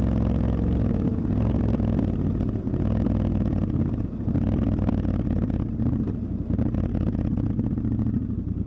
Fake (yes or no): no